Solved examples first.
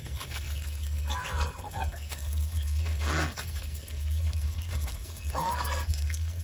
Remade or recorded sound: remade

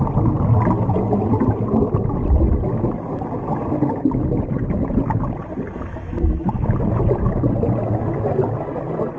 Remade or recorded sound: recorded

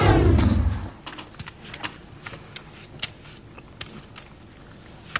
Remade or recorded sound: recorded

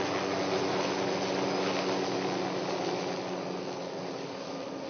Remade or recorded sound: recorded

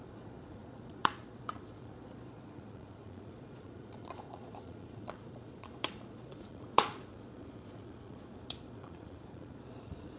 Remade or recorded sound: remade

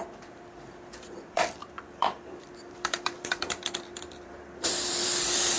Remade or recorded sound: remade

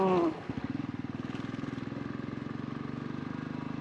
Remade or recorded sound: recorded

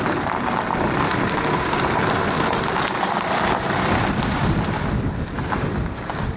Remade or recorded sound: recorded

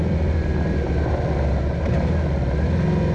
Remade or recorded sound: recorded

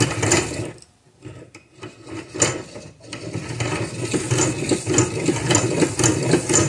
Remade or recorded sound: recorded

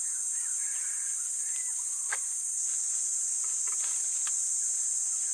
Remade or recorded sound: remade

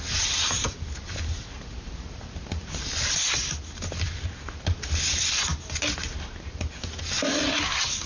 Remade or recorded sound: recorded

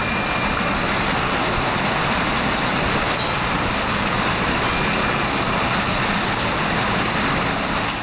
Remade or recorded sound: recorded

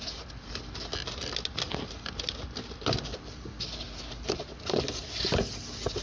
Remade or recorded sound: recorded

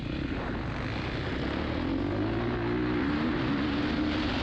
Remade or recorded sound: recorded